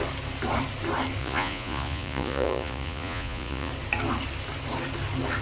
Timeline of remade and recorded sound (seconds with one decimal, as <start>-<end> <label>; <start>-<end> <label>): 0.0-1.2 recorded; 1.2-3.7 remade; 3.7-5.4 recorded